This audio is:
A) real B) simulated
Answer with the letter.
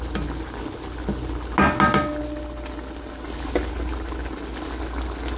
A